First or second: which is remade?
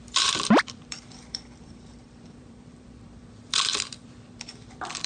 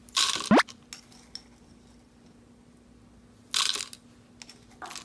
first